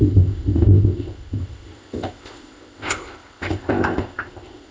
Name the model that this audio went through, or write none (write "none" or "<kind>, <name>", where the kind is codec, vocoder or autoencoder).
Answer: codec, ZipCodec